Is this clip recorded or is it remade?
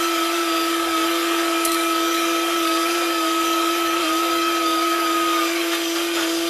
remade